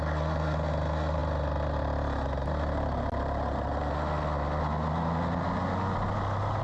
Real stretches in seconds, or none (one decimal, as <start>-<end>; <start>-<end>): 0.0-6.6